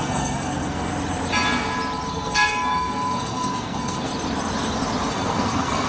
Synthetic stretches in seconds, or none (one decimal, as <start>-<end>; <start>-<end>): 0.0-0.9; 2.1-4.1; 5.1-5.9

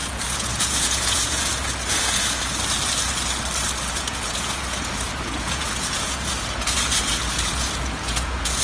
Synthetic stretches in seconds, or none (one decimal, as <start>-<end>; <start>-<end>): 0.0-2.5; 3.9-8.6

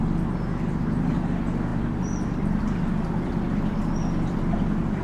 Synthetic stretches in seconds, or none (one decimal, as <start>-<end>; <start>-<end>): 1.7-5.0